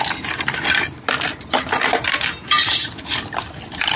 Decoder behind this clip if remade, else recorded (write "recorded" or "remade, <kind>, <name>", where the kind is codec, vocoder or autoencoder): recorded